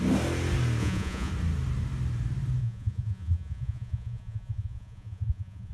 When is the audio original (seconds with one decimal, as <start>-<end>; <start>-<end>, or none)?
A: 0.0-0.8; 1.3-2.6